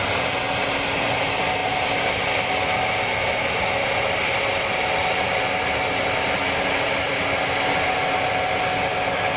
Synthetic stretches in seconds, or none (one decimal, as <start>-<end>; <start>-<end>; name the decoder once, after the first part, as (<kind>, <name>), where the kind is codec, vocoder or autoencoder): 1.6-2.9 (vocoder, BigVGAN v2)